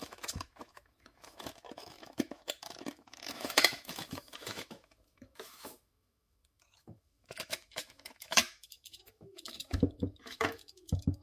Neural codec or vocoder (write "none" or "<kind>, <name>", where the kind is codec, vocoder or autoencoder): autoencoder, DAC-VAE